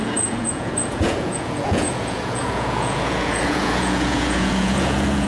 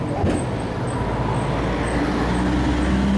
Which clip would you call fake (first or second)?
first